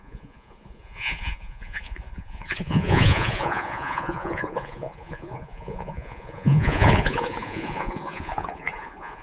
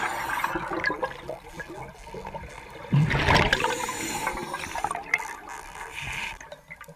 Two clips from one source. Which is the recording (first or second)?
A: second